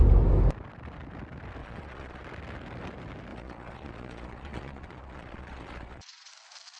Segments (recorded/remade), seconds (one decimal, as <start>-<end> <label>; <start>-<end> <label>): 0.0-1.6 recorded; 1.6-2.2 remade; 2.2-3.3 recorded; 3.3-6.3 remade; 6.3-6.8 recorded